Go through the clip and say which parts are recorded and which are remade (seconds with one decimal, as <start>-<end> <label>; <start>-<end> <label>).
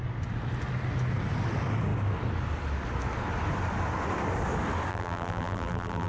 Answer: 0.0-4.9 recorded; 4.9-6.1 remade